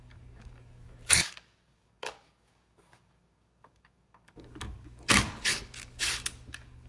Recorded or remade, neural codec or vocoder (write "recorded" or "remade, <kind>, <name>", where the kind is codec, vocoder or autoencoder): remade, codec, DAC